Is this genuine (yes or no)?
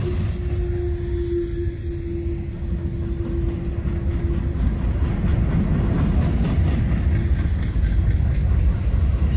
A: yes